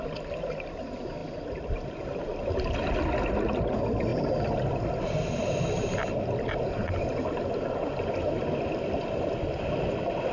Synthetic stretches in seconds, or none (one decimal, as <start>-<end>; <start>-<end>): none